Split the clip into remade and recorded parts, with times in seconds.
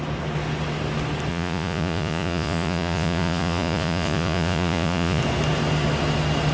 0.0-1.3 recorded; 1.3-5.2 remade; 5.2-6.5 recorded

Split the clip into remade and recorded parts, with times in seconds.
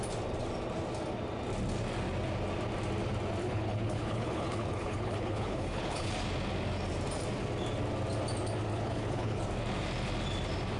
0.0-3.4 recorded; 3.4-6.1 remade; 6.1-8.7 recorded; 8.7-9.4 remade; 9.4-10.8 recorded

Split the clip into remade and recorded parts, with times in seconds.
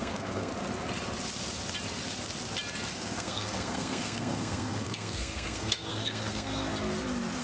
0.0-0.5 remade; 0.5-2.9 recorded; 2.9-6.7 remade; 6.7-7.4 recorded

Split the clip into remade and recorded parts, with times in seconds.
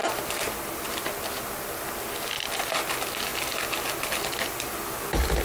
0.0-5.4 recorded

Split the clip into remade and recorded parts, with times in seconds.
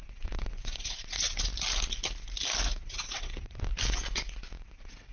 0.0-1.5 remade; 1.5-2.7 recorded; 2.7-3.7 remade; 3.7-4.6 recorded; 4.6-5.1 remade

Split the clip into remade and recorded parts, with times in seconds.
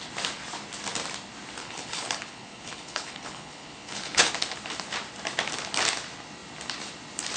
0.0-1.6 recorded; 1.6-4.3 remade; 4.3-7.4 recorded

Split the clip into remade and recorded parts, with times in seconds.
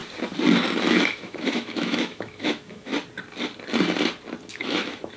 0.0-0.8 recorded; 0.8-2.9 remade; 2.9-4.5 recorded; 4.5-5.2 remade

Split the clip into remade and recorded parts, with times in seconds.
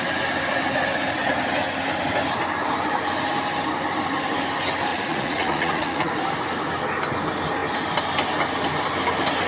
0.0-4.9 recorded; 4.9-6.1 remade; 6.1-9.5 recorded